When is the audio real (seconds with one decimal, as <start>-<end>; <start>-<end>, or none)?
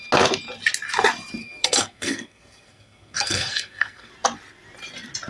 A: 0.0-1.4; 4.1-5.3